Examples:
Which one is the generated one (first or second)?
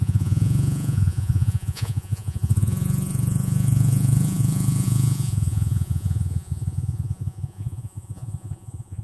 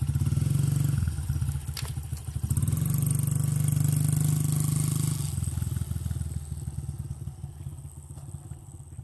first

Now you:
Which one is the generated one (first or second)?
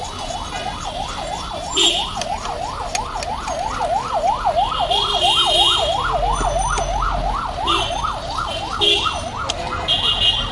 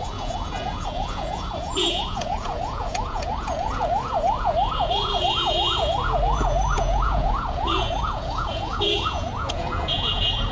second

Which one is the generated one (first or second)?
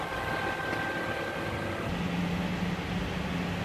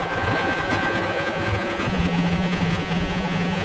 second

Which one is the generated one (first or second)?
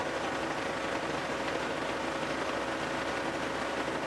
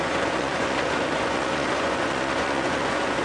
second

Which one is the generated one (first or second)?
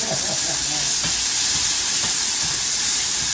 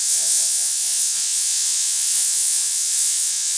second